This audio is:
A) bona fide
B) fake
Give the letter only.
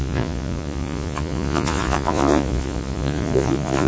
B